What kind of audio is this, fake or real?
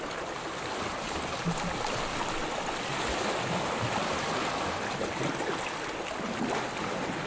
real